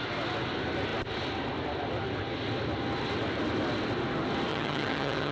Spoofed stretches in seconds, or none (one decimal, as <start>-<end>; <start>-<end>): 4.5-5.3